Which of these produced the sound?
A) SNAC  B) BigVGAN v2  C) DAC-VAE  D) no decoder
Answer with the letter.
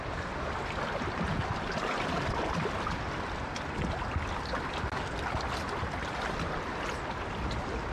D